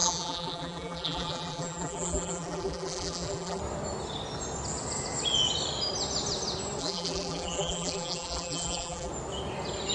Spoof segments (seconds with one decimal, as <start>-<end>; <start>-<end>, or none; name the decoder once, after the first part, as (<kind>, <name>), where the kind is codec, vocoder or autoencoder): 0.0-3.6 (vocoder, BigVGAN v2); 6.8-9.1